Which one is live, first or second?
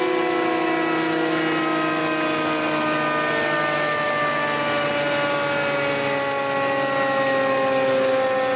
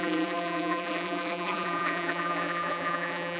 first